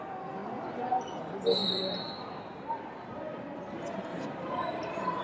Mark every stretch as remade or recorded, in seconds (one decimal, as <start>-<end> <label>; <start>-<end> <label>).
0.0-1.6 recorded; 1.6-3.2 remade; 3.2-4.1 recorded; 4.1-5.2 remade